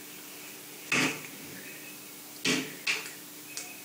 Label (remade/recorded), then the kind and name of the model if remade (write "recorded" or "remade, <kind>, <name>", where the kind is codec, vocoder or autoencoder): recorded